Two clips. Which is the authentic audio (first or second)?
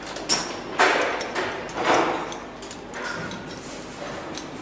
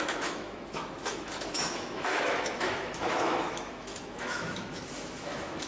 first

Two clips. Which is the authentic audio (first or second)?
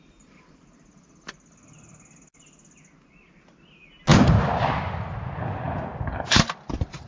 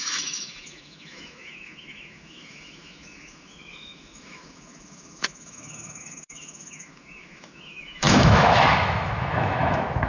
first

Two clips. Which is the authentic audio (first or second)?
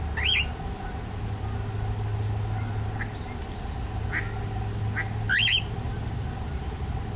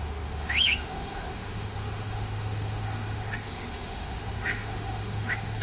first